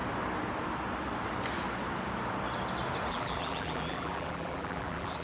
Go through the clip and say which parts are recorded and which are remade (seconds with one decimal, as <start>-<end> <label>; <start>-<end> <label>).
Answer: 0.0-3.1 recorded; 3.1-5.2 remade